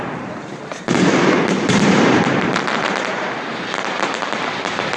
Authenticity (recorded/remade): remade